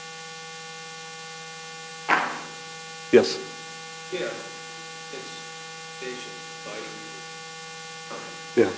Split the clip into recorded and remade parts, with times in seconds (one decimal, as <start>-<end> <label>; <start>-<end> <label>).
0.0-8.8 recorded